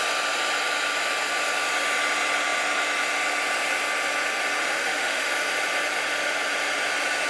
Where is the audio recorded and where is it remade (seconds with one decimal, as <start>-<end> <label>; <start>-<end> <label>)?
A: 0.0-4.6 recorded; 4.6-5.3 remade; 5.3-7.3 recorded